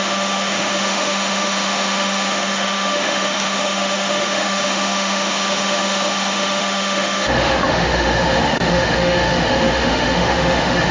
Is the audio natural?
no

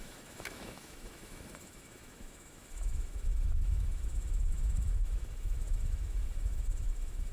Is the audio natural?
no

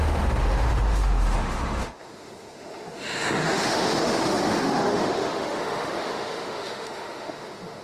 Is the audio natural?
no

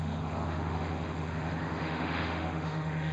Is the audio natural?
no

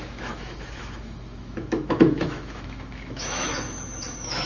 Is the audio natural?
no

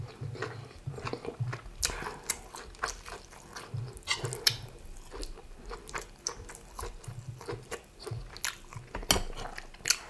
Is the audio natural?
yes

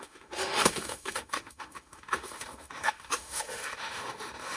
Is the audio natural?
no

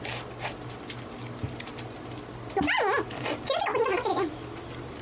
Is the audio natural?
yes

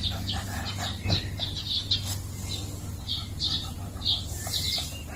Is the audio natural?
yes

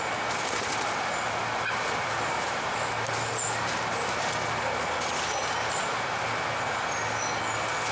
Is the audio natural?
yes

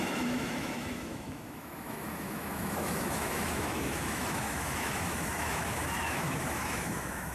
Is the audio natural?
no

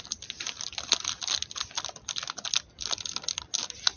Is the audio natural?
yes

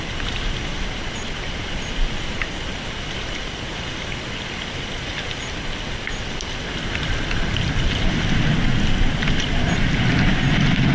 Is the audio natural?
yes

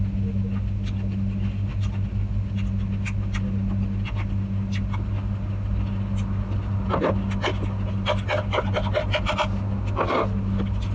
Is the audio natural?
yes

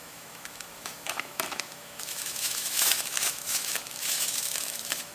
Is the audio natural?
no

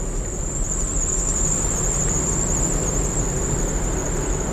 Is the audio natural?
yes